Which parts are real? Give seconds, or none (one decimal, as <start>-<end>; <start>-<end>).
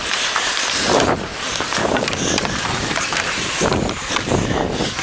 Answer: 0.5-1.3; 4.3-5.0